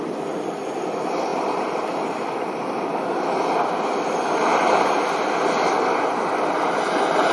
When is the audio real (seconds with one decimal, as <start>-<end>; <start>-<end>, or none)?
0.0-7.3